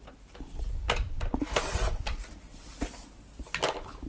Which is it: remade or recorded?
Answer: recorded